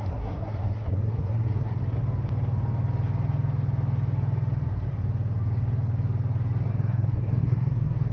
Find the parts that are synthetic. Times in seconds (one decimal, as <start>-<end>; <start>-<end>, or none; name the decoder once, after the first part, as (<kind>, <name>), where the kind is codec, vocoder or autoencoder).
0.0-1.8 (codec, SNAC); 6.7-8.1